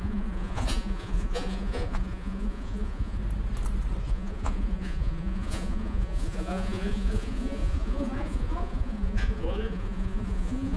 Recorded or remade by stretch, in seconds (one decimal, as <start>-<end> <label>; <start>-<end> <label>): 0.0-3.2 remade; 3.2-4.0 recorded; 4.0-10.8 remade